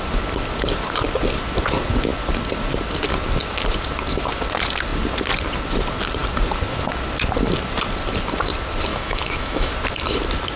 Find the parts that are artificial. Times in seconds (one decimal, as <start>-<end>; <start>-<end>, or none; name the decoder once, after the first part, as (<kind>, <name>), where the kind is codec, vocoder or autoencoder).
8.9-9.7 (autoencoder, DAC-VAE)